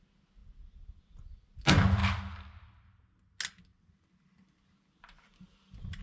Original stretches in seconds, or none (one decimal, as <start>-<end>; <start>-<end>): 0.0-0.4; 1.6-3.7